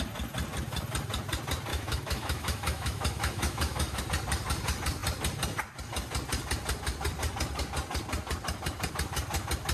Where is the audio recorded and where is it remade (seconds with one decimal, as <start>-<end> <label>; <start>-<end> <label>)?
0.0-1.7 recorded; 1.7-4.0 remade; 4.0-9.7 recorded